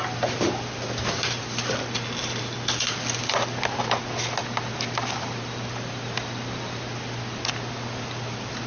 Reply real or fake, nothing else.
real